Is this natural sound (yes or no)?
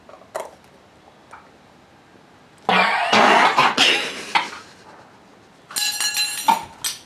yes